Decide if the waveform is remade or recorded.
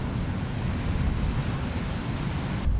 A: recorded